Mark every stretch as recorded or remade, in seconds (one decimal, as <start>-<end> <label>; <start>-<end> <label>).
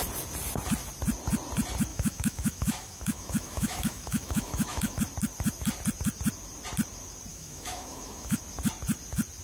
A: 0.0-1.9 recorded; 1.9-5.0 remade; 5.0-7.3 recorded; 7.3-8.4 remade; 8.4-9.4 recorded